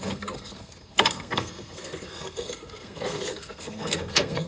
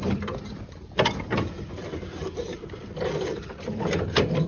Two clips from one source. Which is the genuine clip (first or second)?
second